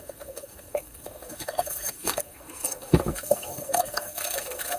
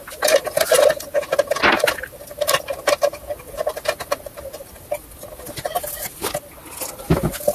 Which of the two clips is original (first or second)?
second